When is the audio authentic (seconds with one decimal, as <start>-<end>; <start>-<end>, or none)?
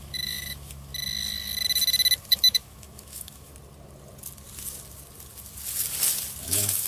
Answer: 0.9-2.3; 3.5-6.4